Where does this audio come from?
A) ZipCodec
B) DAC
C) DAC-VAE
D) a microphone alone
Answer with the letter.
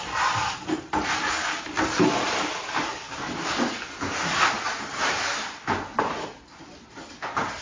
D